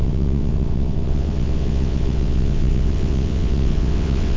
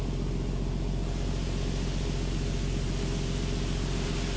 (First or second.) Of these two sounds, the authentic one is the second